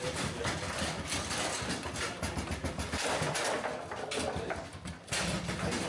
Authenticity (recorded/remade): recorded